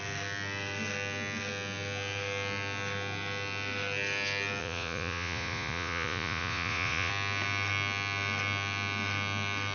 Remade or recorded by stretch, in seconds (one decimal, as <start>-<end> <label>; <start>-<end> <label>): 0.0-4.6 recorded; 4.6-7.1 remade; 7.1-9.7 recorded